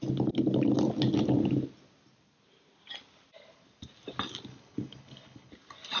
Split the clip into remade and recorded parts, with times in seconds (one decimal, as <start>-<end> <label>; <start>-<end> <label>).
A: 0.0-4.5 recorded; 4.5-5.5 remade; 5.5-6.0 recorded